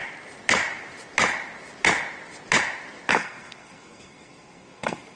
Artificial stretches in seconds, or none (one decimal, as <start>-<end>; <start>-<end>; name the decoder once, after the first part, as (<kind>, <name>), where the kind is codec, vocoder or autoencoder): 3.1-5.2 (codec, SNAC)